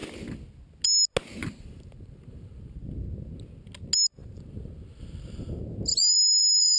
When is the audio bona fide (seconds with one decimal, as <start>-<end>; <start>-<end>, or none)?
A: 0.0-1.4; 2.8-4.2; 4.7-5.9